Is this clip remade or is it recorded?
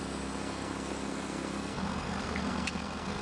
remade